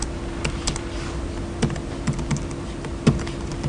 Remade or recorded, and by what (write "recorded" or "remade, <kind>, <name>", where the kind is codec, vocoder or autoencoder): recorded